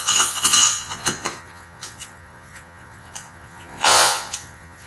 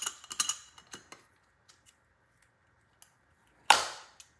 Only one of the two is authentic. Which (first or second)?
second